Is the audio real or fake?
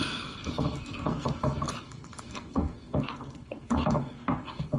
fake